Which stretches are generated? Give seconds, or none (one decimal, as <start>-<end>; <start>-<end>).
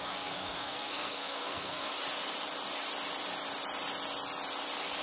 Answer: 0.0-1.9